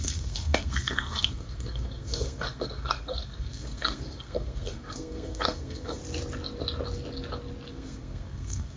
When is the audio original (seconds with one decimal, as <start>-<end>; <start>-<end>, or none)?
6.0-7.7